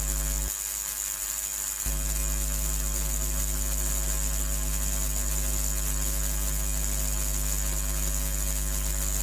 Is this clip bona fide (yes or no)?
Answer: yes